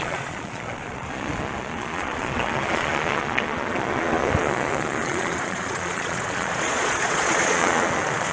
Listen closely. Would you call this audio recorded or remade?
remade